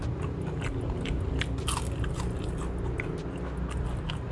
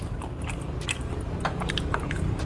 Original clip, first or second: first